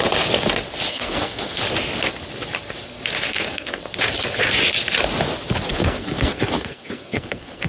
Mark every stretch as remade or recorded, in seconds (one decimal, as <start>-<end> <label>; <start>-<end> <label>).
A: 0.0-0.9 recorded; 0.9-1.6 remade; 1.6-3.3 recorded; 3.3-3.8 remade; 3.8-5.7 recorded; 5.7-7.7 remade